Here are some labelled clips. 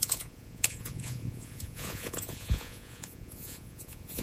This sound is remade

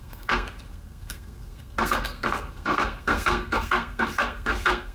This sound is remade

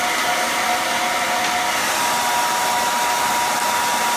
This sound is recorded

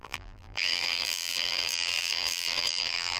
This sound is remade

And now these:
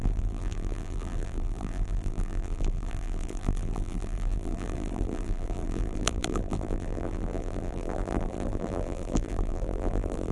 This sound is remade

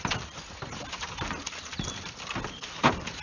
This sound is recorded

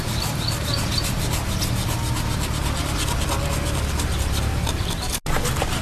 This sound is recorded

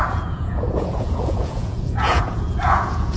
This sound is remade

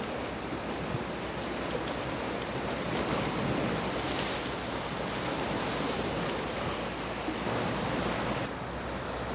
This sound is recorded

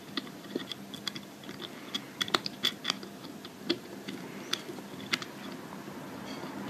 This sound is remade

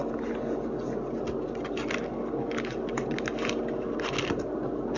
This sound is recorded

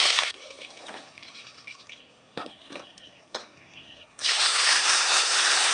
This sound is remade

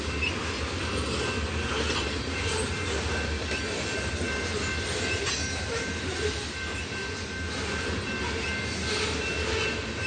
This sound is recorded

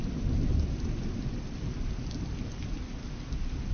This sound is recorded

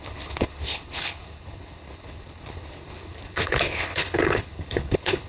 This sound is remade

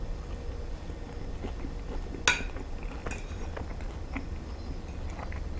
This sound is recorded